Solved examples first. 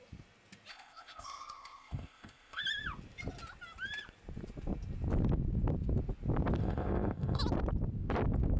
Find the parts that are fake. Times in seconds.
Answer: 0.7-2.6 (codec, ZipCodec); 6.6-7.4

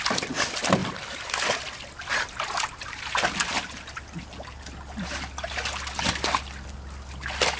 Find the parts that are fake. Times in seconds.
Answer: none

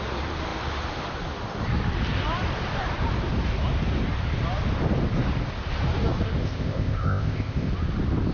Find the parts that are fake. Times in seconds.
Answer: 6.4-7.7 (codec, ZipCodec)

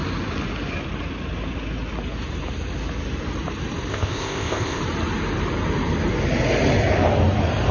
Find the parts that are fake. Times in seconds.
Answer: 3.9-4.8 (codec, ZipCodec)

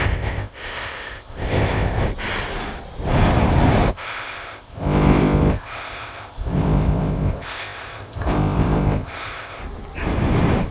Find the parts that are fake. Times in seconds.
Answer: 0.0-2.0 (codec, ZipCodec); 3.9-9.6

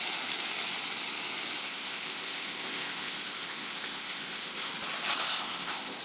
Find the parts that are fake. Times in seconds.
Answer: 1.6-4.7 (codec, ZipCodec); 5.2-6.0